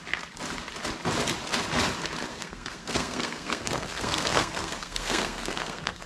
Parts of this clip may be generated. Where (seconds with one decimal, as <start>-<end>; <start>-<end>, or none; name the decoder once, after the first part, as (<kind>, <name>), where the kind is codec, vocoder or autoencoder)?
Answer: 2.3-6.1 (codec, SNAC)